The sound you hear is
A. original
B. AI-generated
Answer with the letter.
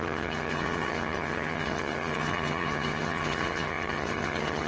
B